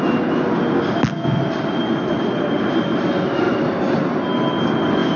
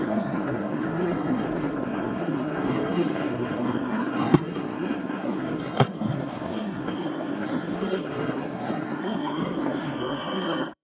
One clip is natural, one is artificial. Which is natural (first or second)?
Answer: first